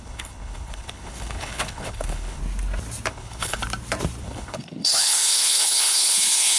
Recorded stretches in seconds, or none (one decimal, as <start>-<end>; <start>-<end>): 2.4-3.1; 3.6-4.2